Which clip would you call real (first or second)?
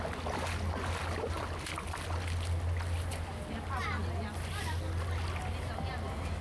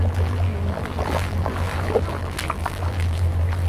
first